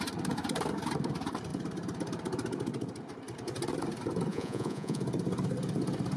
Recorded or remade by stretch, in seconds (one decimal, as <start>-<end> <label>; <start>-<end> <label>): 0.0-4.3 recorded; 4.3-5.0 remade; 5.0-6.2 recorded